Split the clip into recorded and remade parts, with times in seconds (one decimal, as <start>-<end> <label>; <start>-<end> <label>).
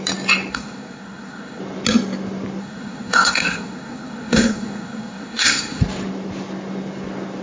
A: 0.0-0.5 recorded; 0.5-1.6 remade; 1.6-2.6 recorded; 2.6-5.8 remade; 5.8-7.4 recorded